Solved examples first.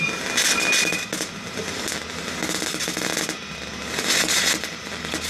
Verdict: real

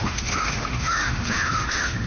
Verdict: fake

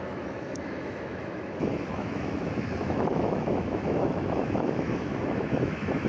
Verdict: fake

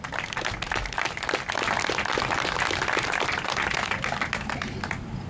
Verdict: real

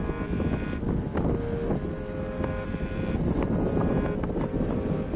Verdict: real